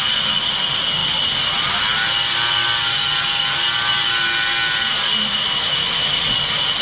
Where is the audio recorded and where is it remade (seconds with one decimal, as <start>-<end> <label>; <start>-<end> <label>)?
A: 0.0-5.3 recorded; 5.3-6.2 remade; 6.2-6.8 recorded